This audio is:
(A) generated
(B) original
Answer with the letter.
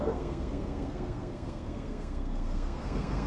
A